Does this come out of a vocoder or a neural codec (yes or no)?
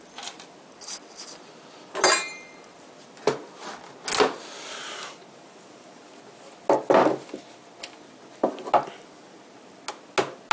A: no